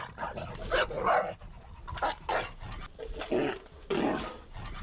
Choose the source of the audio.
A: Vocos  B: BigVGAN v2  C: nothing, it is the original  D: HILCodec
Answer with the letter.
C